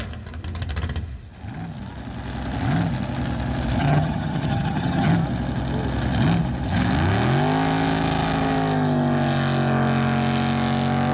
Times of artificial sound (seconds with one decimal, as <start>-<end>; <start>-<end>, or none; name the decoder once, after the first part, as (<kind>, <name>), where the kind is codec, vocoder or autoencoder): 3.8-5.1 (vocoder, HiFi-GAN)